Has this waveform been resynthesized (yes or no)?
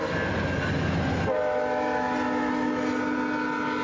no